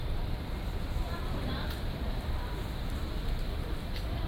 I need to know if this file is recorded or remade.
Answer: remade